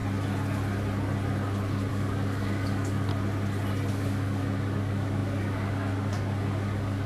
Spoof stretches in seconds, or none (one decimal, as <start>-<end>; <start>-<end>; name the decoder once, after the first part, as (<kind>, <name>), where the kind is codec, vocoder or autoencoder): 1.9-3.1 (codec, DAC); 3.9-7.1